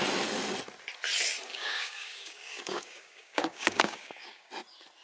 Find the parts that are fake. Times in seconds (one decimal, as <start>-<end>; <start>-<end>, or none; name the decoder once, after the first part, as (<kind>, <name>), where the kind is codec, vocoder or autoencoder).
1.5-4.5 (codec, DAC)